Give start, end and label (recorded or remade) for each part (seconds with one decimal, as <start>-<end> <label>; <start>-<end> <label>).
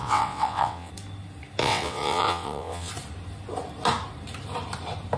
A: 0.0-0.9 remade; 0.9-1.6 recorded; 1.6-2.9 remade; 2.9-5.2 recorded